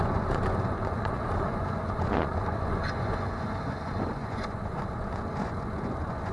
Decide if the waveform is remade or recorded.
remade